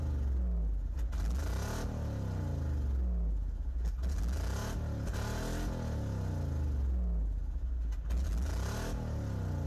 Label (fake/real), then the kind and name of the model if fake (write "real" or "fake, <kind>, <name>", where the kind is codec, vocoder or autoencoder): real